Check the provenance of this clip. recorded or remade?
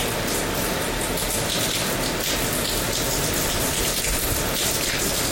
recorded